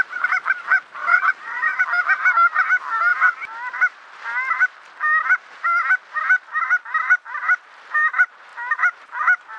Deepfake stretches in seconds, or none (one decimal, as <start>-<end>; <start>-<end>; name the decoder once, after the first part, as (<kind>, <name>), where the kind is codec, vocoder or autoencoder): 1.0-1.8 (vocoder, Vocos)